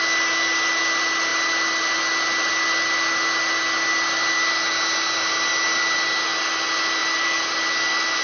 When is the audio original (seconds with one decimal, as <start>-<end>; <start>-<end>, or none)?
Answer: 0.0-7.0; 7.5-8.2